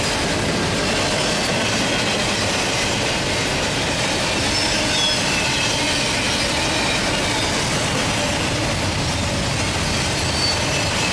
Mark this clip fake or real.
real